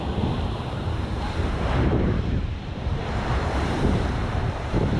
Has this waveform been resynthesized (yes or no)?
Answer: yes